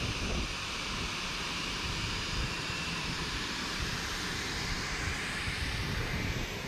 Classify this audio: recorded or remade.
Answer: remade